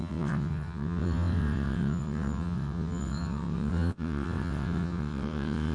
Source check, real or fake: fake